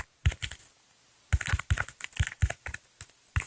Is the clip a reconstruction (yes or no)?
no